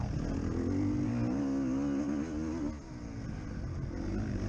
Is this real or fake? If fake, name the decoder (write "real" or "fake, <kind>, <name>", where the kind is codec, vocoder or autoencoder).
real